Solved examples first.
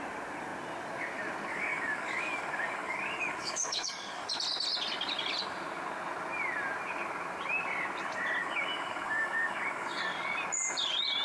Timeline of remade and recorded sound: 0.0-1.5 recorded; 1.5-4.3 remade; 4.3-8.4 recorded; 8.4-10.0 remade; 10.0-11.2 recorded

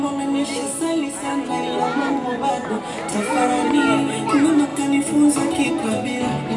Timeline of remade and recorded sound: 0.0-1.9 recorded; 1.9-2.4 remade; 2.4-6.6 recorded

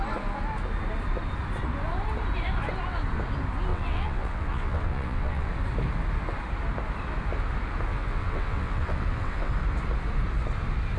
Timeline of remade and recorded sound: 0.0-3.7 recorded; 3.7-5.5 remade; 5.5-7.9 recorded; 7.9-9.5 remade; 9.5-11.0 recorded

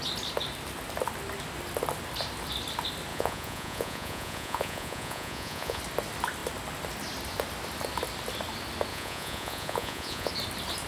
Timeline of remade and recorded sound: 0.0-3.1 recorded; 3.1-5.8 remade; 5.8-8.9 recorded; 8.9-10.3 remade; 10.3-10.9 recorded

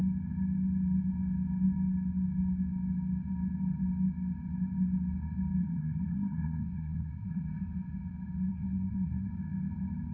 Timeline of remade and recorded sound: 0.0-5.6 recorded; 5.6-7.4 remade; 7.4-8.5 recorded; 8.5-9.3 remade; 9.3-10.1 recorded

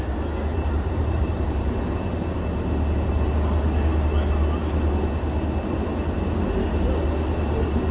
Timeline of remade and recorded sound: 0.0-0.5 recorded; 0.5-1.8 remade; 1.8-7.9 recorded

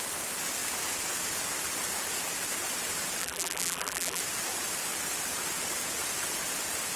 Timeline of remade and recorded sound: 0.0-3.2 recorded; 3.2-4.2 remade; 4.2-7.0 recorded

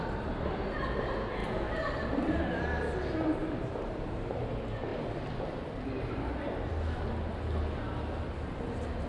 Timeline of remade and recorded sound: 0.0-1.4 recorded; 1.4-2.4 remade; 2.4-3.4 recorded; 3.4-4.5 remade; 4.5-9.1 recorded